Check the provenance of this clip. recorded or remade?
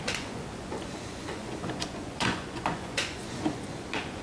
remade